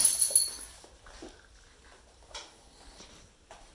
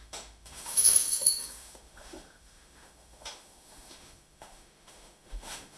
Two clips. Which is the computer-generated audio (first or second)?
second